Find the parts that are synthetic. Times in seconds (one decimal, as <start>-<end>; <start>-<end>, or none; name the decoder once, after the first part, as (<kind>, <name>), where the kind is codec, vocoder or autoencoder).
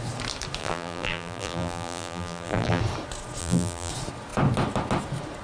0.6-2.8 (vocoder, BigVGAN v2); 3.4-3.9